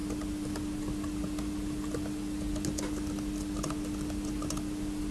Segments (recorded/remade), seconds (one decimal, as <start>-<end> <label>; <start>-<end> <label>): 0.0-5.1 recorded

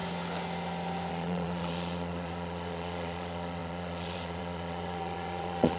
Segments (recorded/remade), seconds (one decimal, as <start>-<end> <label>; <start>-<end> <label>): 0.0-1.1 recorded; 1.1-5.8 remade